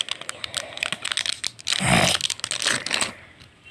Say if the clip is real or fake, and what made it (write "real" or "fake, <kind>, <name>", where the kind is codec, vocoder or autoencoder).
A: real